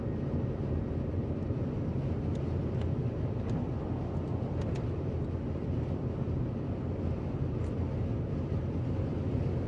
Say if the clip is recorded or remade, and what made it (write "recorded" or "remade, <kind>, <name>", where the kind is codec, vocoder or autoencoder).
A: recorded